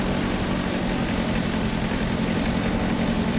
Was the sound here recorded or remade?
recorded